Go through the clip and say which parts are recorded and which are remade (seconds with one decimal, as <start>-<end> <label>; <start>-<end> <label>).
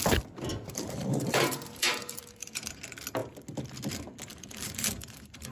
0.0-0.5 recorded; 0.5-2.8 remade; 2.8-4.3 recorded; 4.3-5.5 remade